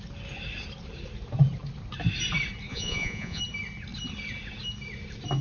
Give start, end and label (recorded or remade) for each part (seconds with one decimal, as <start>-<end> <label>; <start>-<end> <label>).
0.0-2.7 recorded; 2.7-3.4 remade; 3.4-5.4 recorded